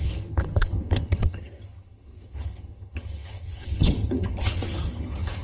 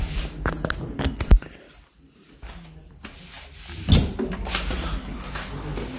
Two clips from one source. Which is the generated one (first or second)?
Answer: first